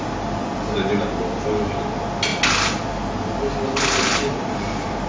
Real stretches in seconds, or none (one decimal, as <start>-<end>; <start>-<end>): 0.0-5.1